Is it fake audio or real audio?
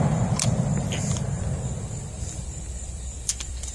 fake